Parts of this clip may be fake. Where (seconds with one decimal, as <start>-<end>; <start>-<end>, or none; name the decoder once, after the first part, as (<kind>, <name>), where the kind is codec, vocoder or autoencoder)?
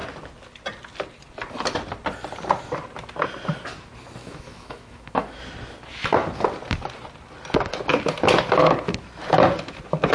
4.2-5.4 (autoencoder, DAC-VAE)